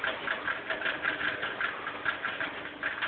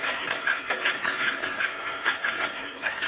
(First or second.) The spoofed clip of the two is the second